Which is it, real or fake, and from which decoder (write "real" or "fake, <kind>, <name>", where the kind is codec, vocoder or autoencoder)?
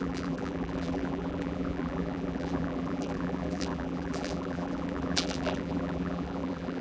fake, vocoder, BigVGAN v2